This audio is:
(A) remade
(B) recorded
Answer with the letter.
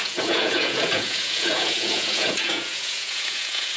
A